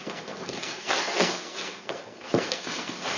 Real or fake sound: fake